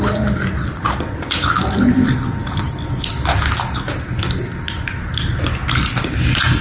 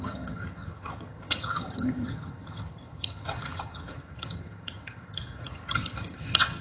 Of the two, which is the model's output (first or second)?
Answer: second